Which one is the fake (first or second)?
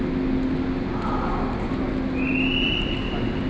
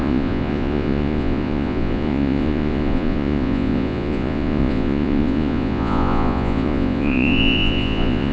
second